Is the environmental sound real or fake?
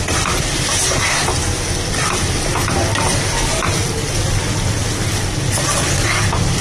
real